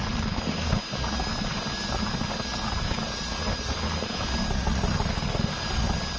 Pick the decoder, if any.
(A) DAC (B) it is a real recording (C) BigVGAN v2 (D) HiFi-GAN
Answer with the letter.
B